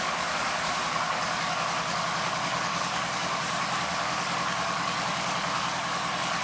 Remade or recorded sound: remade